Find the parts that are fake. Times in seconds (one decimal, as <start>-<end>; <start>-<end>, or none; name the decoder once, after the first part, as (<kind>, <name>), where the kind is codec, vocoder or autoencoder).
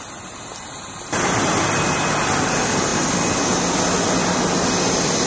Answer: none